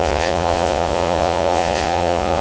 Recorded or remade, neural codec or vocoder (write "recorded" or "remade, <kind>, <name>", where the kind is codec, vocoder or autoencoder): remade, vocoder, Vocos